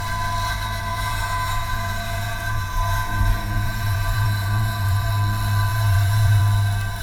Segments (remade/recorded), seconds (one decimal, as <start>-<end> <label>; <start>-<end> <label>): 0.0-0.9 recorded; 0.9-5.1 remade; 5.1-5.7 recorded; 5.7-6.4 remade; 6.4-7.0 recorded